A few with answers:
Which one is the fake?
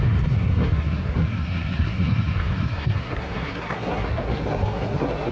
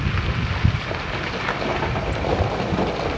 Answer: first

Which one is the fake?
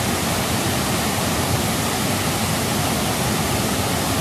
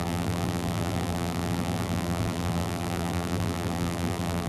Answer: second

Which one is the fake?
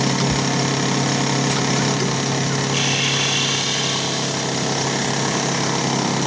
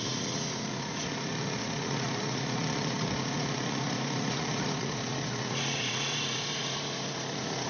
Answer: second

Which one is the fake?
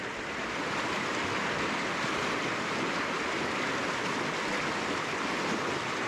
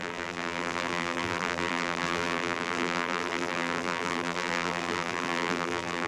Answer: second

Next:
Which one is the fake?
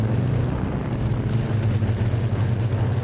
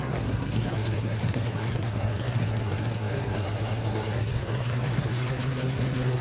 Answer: second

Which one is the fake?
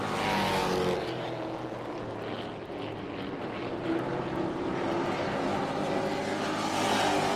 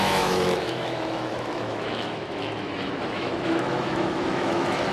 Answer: second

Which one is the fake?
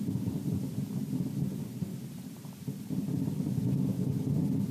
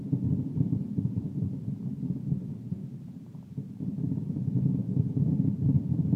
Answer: second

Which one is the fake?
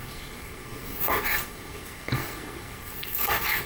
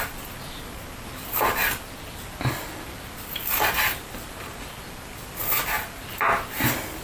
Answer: first